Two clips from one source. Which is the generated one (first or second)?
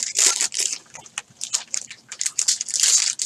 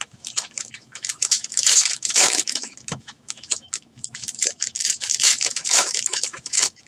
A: second